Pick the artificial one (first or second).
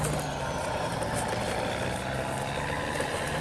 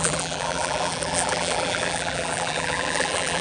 second